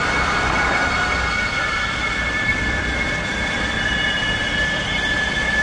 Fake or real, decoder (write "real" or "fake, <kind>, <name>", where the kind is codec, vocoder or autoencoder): fake, vocoder, BigVGAN v2